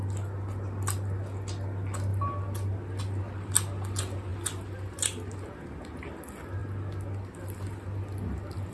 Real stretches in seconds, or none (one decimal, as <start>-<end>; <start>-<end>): 0.0-8.7